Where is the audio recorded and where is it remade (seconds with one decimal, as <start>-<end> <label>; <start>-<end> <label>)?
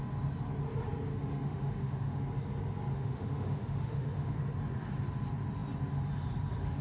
0.0-1.1 recorded; 1.1-2.2 remade; 2.2-2.9 recorded; 2.9-4.4 remade; 4.4-6.8 recorded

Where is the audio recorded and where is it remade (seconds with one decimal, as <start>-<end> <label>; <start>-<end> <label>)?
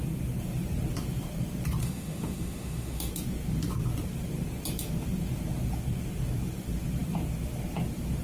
0.0-1.8 recorded; 1.8-3.1 remade; 3.1-8.2 recorded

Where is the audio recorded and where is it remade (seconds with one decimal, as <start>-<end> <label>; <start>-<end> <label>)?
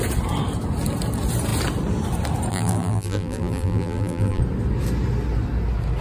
0.0-2.5 recorded; 2.5-4.4 remade; 4.4-6.0 recorded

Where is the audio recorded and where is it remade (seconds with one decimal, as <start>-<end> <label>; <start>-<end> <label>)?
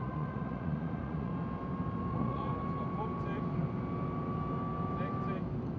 0.0-1.3 remade; 1.3-2.1 recorded; 2.1-2.5 remade; 2.5-5.8 recorded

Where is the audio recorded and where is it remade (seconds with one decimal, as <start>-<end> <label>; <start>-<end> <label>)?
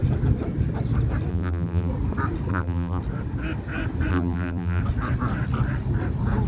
0.0-1.3 recorded; 1.3-1.9 remade; 1.9-2.5 recorded; 2.5-3.0 remade; 3.0-4.1 recorded; 4.1-4.8 remade; 4.8-6.5 recorded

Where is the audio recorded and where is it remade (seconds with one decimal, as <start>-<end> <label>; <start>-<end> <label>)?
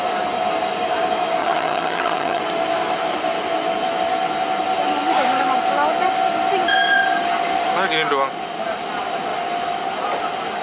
0.0-1.4 recorded; 1.4-2.4 remade; 2.4-10.6 recorded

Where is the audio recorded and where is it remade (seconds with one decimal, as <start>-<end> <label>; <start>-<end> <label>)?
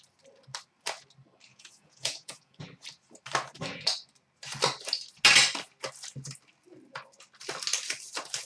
0.0-1.5 recorded; 1.5-2.6 remade; 2.6-8.4 recorded